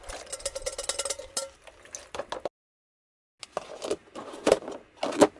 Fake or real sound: real